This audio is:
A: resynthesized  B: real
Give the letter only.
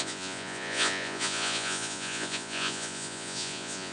A